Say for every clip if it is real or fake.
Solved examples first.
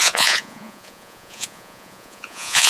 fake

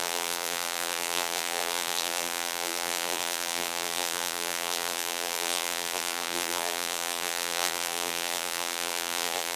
fake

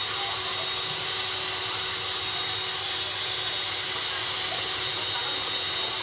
real